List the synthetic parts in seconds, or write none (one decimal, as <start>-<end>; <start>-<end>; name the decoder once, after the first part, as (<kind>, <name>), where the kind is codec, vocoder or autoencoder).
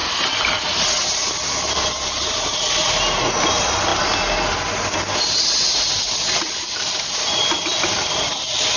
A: none